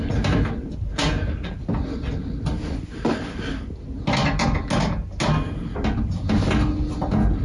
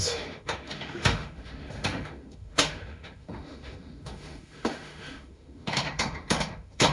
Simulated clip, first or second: second